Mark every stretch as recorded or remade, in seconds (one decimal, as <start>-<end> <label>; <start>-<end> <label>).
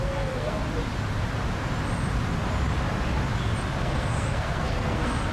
0.0-0.6 remade; 0.6-3.8 recorded; 3.8-5.3 remade